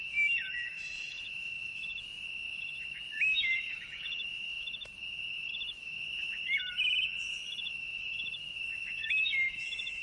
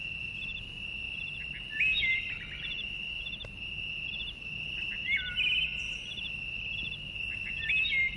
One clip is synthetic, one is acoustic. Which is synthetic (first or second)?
first